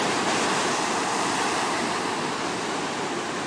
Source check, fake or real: real